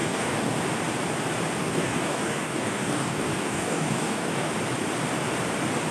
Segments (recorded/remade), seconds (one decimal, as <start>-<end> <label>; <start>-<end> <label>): 0.0-0.6 remade; 0.6-1.6 recorded; 1.6-4.5 remade; 4.5-5.9 recorded